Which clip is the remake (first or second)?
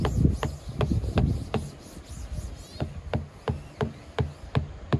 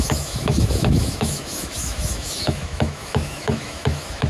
second